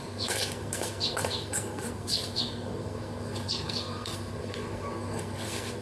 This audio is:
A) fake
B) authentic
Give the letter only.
A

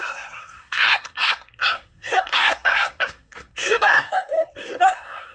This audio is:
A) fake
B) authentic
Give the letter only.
A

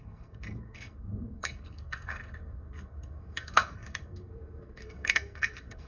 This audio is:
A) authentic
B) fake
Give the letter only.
B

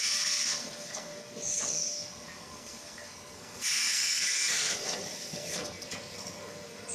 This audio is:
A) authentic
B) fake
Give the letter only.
B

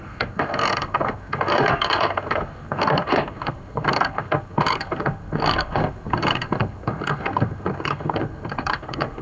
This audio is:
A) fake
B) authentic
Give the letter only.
A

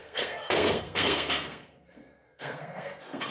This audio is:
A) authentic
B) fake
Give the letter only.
B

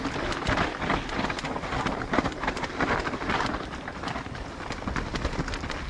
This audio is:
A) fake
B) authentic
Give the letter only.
B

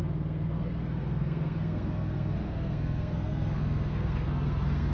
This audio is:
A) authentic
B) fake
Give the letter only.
B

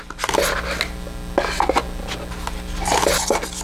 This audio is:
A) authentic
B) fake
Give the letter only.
A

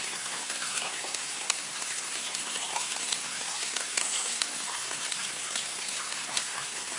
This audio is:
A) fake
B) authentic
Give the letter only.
A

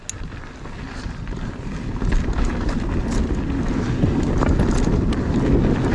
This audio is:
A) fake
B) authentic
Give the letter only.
B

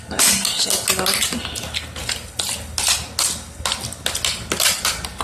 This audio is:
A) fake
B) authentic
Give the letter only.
B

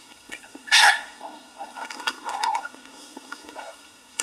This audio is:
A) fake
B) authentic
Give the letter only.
A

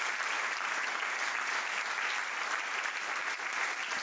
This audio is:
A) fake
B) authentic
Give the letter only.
B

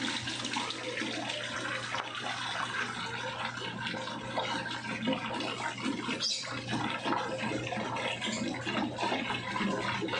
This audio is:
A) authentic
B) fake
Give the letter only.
A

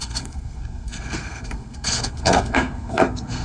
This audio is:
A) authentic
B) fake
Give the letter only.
B